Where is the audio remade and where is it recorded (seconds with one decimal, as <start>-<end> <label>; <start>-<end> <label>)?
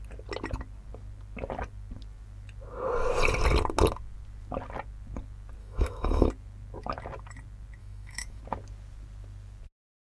0.0-5.6 recorded; 5.6-6.3 remade; 6.3-7.8 recorded; 7.8-8.4 remade; 8.4-10.1 recorded